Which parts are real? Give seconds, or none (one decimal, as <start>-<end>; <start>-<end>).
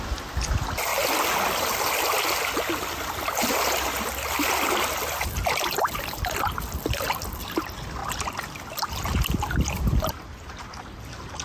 0.0-11.4